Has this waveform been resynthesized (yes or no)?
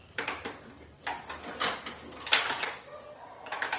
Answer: no